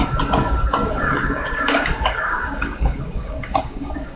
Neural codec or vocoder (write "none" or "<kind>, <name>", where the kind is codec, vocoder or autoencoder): codec, DAC